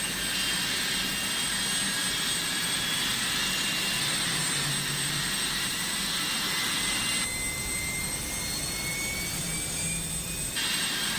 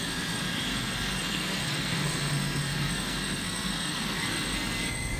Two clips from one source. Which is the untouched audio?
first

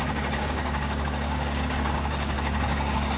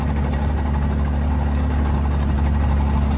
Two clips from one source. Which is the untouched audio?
second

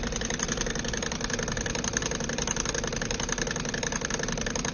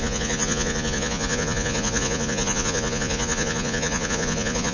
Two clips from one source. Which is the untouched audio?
first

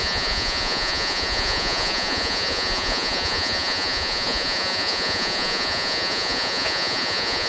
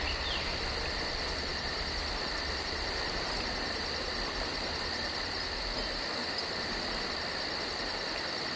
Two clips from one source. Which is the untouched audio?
second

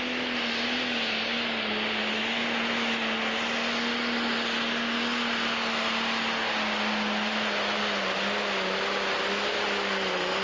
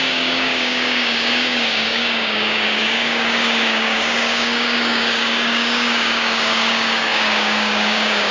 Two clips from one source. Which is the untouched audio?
first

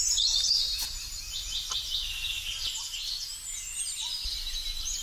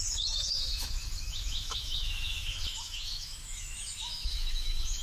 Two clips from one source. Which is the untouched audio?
first